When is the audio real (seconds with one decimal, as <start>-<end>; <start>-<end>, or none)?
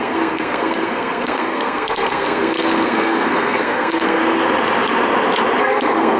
4.2-5.6